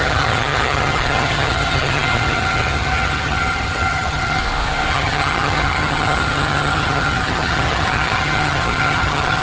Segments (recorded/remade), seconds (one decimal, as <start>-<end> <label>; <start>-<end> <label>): 0.0-4.4 remade; 4.4-4.9 recorded; 4.9-9.4 remade

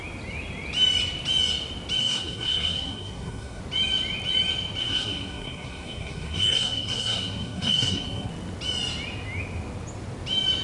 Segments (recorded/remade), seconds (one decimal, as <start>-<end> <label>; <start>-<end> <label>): 0.0-2.0 recorded; 2.0-3.6 remade; 3.6-4.8 recorded; 4.8-8.3 remade; 8.3-10.6 recorded